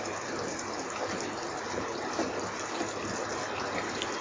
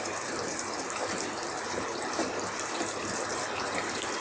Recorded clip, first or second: first